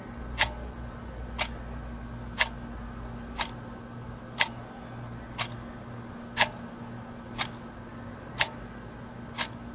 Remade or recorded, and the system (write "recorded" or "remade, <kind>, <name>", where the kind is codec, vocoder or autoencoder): recorded